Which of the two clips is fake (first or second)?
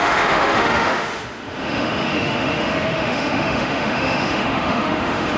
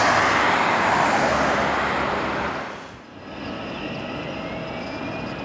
first